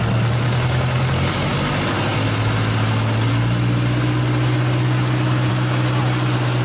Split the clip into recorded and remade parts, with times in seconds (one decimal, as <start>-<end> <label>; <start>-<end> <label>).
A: 0.0-6.6 recorded